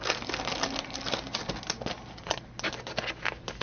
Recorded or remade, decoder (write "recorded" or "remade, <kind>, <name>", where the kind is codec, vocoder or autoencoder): recorded